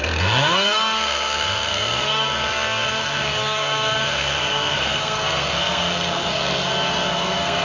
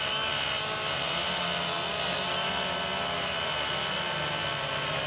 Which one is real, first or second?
second